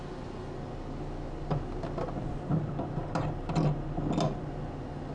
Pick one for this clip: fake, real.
real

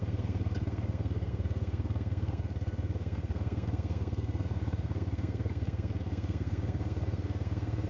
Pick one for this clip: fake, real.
fake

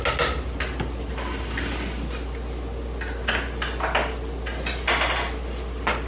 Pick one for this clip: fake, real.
real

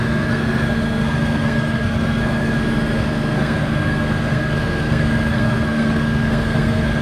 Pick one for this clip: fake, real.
fake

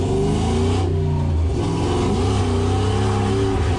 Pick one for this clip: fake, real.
real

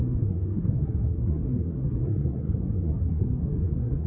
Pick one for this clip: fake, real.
fake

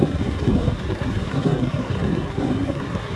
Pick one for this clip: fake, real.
fake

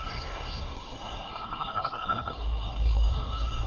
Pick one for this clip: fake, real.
fake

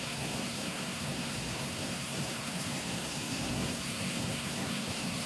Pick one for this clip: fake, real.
fake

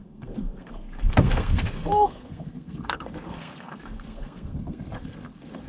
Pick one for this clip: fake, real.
fake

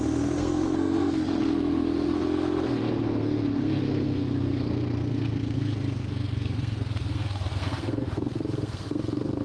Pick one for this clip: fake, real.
fake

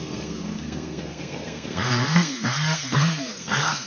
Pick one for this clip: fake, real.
fake